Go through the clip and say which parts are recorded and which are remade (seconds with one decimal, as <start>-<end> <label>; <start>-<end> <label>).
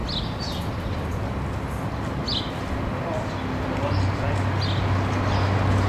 0.0-5.9 recorded